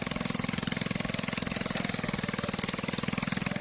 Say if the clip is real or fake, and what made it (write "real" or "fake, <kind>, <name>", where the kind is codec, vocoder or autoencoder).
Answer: real